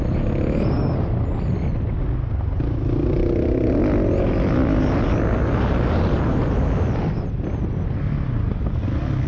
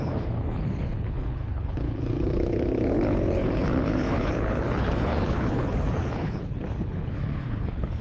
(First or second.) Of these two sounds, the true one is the first